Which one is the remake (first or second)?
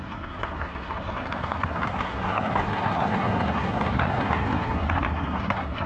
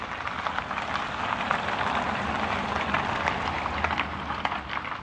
first